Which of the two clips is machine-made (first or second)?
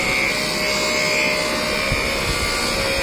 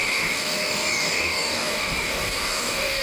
second